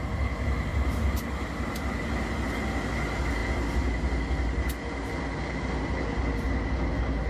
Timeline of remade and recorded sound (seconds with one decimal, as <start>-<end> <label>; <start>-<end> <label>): 0.0-0.7 recorded; 0.7-1.7 remade; 1.7-7.3 recorded